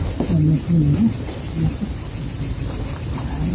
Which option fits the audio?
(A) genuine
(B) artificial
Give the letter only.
A